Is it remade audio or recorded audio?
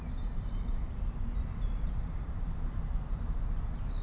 recorded